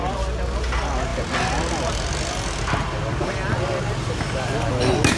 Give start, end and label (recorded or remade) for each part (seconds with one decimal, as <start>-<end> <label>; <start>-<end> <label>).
0.0-5.2 recorded